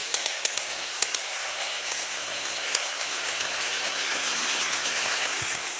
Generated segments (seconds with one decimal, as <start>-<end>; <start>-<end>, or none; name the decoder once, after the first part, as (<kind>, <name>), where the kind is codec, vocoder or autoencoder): 0.0-5.8 (codec, SNAC)